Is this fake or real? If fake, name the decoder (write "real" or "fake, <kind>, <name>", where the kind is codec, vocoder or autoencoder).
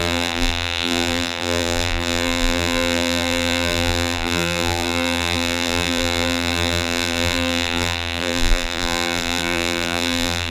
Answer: fake, vocoder, BigVGAN v2